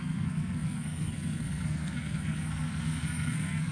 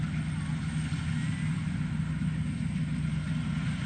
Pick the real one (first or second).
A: second